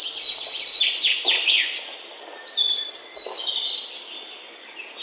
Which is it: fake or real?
fake